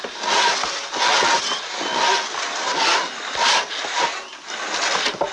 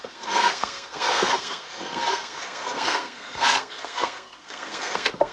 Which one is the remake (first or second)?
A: second